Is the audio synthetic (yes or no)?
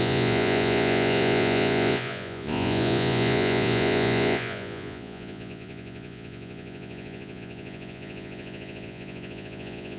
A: yes